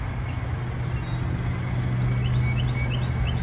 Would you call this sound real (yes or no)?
yes